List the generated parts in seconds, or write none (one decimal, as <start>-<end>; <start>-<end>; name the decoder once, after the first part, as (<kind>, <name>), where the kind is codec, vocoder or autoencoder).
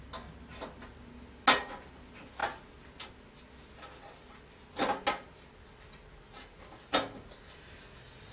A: none